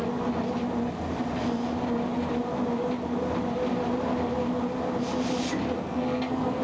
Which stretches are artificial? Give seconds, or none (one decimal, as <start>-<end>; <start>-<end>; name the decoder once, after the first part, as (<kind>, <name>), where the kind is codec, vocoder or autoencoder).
5.8-6.6 (codec, SNAC)